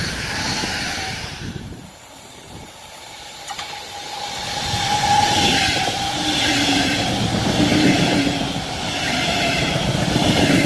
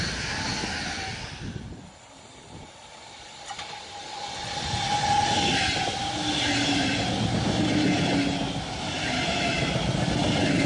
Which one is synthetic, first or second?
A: first